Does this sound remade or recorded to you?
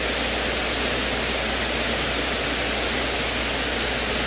recorded